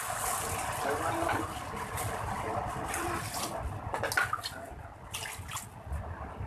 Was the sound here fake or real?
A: real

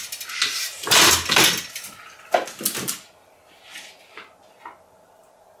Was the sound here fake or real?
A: real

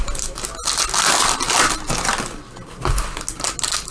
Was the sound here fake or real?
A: real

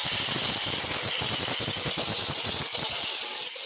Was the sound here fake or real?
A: real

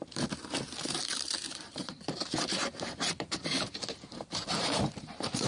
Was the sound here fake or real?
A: fake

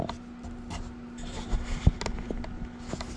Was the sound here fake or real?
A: real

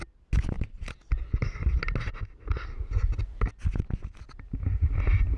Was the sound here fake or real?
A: real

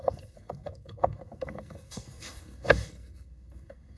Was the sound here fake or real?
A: fake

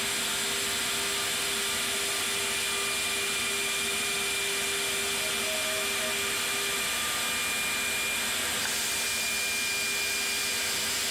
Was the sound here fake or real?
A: real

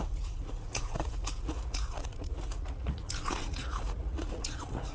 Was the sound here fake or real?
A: fake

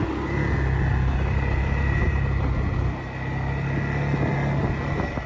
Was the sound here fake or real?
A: real